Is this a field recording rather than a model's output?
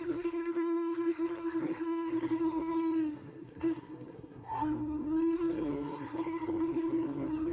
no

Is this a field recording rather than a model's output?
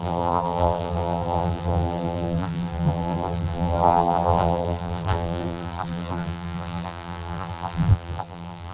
no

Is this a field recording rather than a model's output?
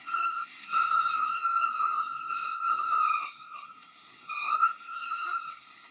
no